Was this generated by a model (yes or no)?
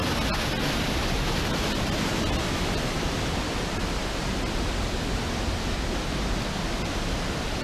no